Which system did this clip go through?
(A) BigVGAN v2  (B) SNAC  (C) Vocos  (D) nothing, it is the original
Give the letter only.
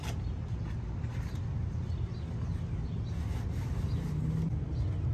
D